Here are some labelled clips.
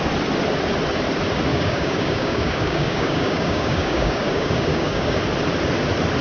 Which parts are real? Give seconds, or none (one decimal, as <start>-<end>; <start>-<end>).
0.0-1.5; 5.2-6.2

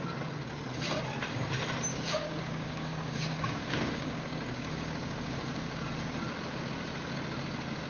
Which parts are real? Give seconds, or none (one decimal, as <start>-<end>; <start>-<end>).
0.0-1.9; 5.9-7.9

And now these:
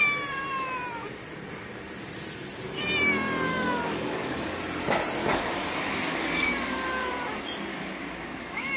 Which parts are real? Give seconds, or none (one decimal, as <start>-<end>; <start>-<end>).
0.0-3.5; 4.6-5.2; 7.1-7.7

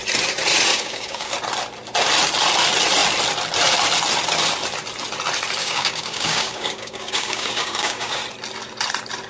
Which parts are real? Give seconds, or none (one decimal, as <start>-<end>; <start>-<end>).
0.0-0.7; 1.3-5.6; 8.2-9.3

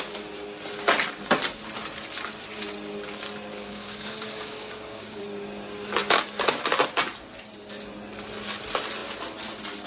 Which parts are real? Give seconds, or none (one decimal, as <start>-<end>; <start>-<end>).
0.0-3.5; 5.2-9.9

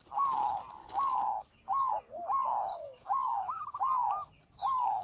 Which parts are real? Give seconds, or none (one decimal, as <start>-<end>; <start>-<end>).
0.0-0.8; 1.9-2.7; 3.6-5.0

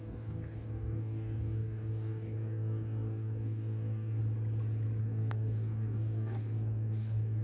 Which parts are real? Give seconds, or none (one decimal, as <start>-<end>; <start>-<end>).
4.2-5.0